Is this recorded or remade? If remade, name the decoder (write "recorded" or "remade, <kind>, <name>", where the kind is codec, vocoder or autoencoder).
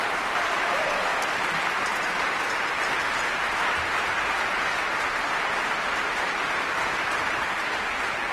recorded